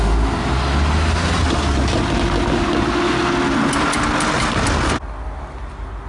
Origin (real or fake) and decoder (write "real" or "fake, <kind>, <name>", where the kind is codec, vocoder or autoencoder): real